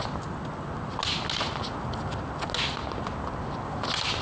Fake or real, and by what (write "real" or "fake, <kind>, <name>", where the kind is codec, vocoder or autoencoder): real